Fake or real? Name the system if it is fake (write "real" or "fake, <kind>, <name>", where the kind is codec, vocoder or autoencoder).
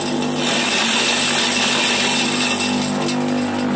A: real